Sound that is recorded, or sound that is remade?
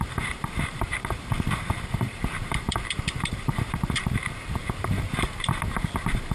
remade